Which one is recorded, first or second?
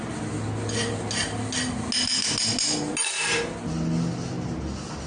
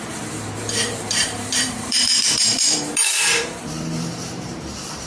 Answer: first